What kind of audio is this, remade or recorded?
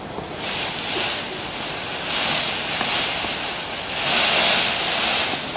recorded